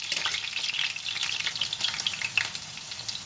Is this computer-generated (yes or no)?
no